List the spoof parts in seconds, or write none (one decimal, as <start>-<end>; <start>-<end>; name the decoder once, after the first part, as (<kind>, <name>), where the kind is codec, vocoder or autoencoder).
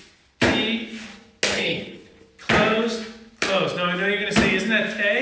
1.5-2.3 (codec, HILCodec)